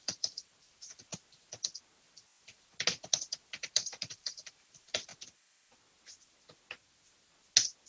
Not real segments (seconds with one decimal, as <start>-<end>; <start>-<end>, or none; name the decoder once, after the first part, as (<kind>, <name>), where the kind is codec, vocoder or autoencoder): 0.0-1.1 (vocoder, BigVGAN v2); 3.5-5.1